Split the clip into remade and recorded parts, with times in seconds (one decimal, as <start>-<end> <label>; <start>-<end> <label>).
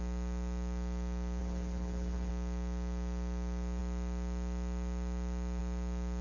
0.0-1.4 recorded; 1.4-2.3 remade; 2.3-6.2 recorded